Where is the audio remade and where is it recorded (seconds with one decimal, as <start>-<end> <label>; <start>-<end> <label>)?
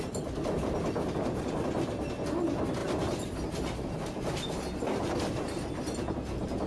0.0-6.7 recorded